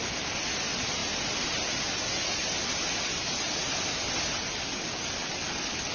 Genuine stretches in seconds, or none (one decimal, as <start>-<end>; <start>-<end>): 0.0-5.9